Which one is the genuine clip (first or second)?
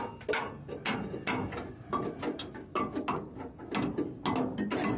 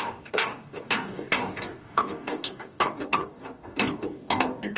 first